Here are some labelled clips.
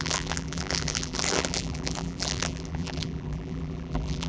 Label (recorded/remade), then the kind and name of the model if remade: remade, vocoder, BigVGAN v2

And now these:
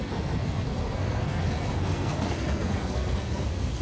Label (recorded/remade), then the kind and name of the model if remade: remade, codec, SNAC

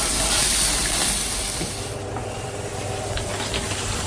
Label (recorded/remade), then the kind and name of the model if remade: recorded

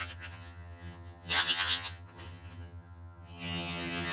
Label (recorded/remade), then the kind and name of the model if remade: remade, vocoder, HiFi-GAN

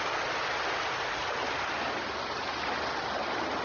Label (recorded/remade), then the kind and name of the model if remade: recorded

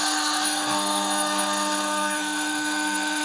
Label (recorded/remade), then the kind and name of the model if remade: remade, codec, SNAC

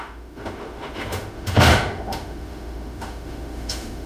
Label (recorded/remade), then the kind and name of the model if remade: remade, autoencoder, DAC-VAE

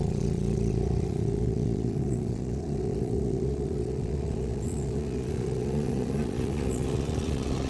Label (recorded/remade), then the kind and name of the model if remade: remade, vocoder, Vocos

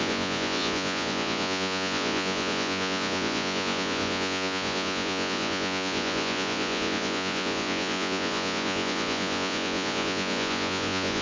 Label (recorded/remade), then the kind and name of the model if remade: remade, vocoder, Vocos